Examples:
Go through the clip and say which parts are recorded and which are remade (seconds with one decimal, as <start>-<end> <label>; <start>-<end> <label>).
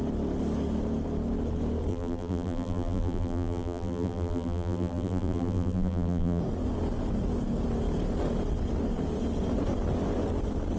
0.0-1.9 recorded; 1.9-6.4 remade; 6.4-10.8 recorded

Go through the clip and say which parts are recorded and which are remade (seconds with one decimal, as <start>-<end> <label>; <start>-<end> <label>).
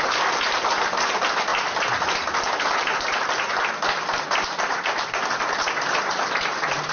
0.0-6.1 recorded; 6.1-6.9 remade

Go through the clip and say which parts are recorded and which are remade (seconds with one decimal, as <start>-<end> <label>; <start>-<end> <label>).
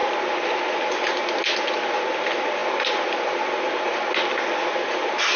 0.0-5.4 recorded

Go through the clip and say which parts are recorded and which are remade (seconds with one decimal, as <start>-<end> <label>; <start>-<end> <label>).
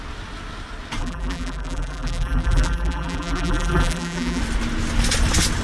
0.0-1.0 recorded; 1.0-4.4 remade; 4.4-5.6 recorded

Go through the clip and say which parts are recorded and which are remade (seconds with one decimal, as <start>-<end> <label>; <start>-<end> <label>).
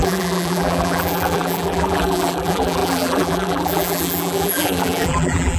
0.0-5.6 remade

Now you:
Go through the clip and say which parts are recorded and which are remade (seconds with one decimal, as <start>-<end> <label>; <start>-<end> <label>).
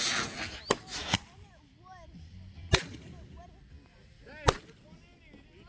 0.0-1.0 recorded; 1.0-2.8 remade; 2.8-5.7 recorded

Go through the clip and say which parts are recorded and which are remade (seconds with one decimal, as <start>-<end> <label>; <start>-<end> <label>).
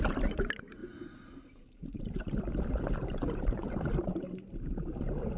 0.0-0.8 recorded; 0.8-2.4 remade; 2.4-3.0 recorded; 3.0-5.4 remade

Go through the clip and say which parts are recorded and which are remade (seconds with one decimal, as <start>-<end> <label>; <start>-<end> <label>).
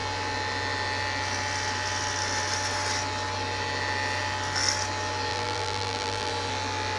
0.0-5.3 recorded; 5.3-6.3 remade; 6.3-7.0 recorded